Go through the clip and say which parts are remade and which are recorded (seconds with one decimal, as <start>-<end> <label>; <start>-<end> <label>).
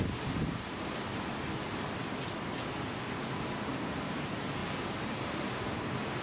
0.0-1.1 remade; 1.1-3.9 recorded; 3.9-6.2 remade